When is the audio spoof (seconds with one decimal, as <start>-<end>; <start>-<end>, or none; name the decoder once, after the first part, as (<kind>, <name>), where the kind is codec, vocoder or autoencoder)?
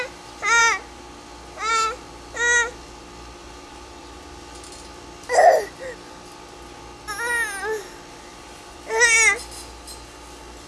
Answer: 3.4-4.2 (vocoder, BigVGAN v2); 8.3-8.8